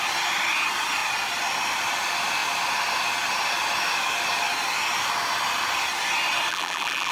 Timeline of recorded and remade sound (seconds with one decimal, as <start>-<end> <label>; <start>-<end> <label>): 0.0-6.5 recorded; 6.5-7.1 remade